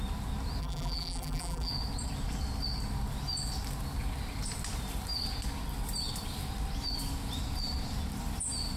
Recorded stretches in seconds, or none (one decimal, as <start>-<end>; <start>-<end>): 0.0-0.6; 1.7-8.8